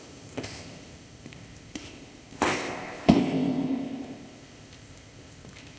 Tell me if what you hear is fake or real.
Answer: fake